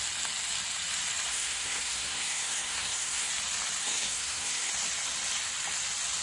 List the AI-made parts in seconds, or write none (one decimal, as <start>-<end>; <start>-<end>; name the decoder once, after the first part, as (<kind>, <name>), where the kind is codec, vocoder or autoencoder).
1.3-3.3 (codec, SNAC); 3.8-4.7